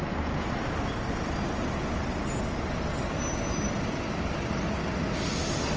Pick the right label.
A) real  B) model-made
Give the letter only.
A